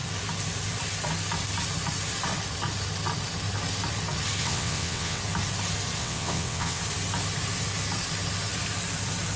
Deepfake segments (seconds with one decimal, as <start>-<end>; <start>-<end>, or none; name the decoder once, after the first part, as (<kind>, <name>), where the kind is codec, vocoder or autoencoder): 4.4-5.2 (vocoder, WaveNeXt); 6.0-6.8